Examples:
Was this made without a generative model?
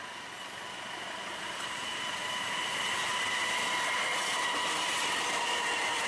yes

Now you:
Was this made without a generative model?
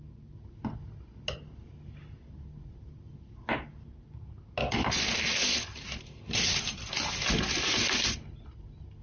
yes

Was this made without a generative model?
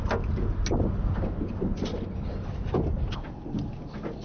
yes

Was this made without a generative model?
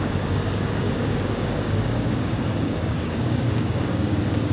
no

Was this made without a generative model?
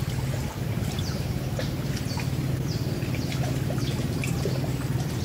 yes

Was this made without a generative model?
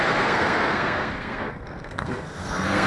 no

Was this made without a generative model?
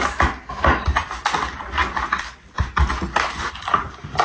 yes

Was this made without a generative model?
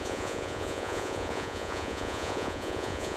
no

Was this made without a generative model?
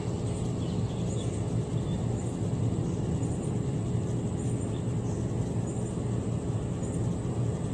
yes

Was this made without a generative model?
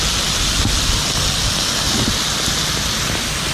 yes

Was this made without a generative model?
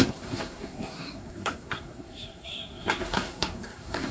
no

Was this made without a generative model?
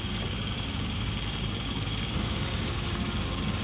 no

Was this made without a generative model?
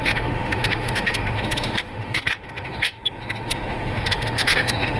no